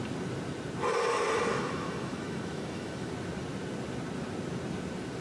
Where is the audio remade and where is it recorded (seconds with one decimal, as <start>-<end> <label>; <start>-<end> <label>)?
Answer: 0.0-1.5 recorded; 1.5-3.1 remade; 3.1-5.2 recorded